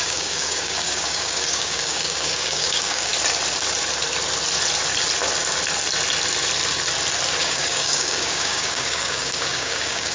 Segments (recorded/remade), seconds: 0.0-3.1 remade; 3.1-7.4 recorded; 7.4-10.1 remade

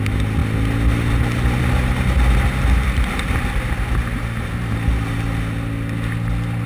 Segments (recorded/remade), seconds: 0.0-6.7 recorded